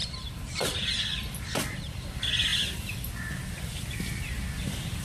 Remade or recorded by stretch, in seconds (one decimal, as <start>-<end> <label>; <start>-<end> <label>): 0.0-0.8 remade; 0.8-5.0 recorded